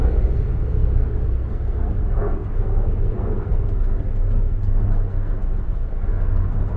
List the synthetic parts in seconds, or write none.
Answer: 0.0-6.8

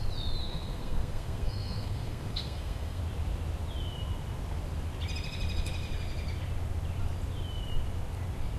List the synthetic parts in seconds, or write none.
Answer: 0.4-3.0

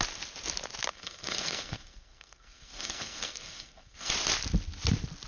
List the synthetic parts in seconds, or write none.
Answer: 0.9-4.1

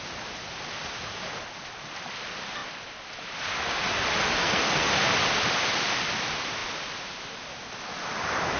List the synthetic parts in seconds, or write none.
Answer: 4.4-4.9

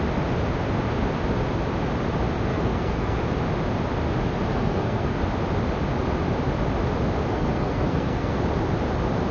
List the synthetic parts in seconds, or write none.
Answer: 2.5-3.2; 4.5-5.2; 7.3-8.4

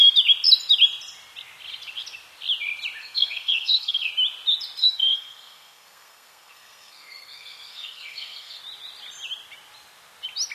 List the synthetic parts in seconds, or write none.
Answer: 3.0-4.1; 4.8-8.6